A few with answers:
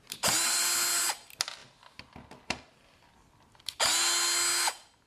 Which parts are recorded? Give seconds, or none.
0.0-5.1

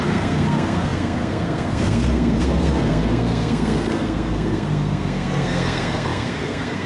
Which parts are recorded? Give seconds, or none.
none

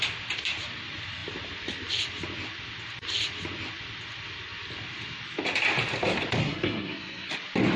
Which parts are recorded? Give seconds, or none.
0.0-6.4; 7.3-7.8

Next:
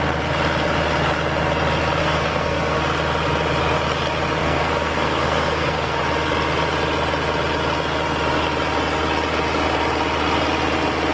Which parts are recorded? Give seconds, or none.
0.0-2.0; 2.8-4.4; 6.0-11.1

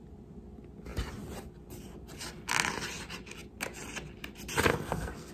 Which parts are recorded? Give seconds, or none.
0.0-4.7